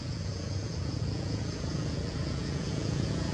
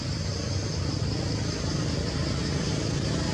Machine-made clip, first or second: first